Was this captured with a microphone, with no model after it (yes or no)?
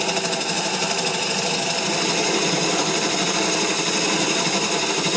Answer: no